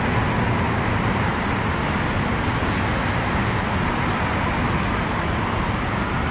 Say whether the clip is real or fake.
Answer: real